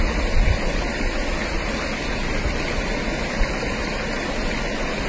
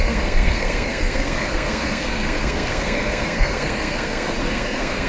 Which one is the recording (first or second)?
first